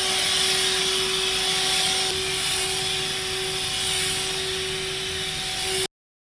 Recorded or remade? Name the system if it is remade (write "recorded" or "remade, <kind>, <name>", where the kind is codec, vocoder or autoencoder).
recorded